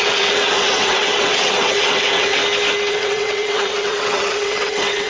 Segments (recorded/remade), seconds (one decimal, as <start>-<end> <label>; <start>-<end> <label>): 0.0-2.4 remade; 2.4-2.9 recorded; 2.9-5.1 remade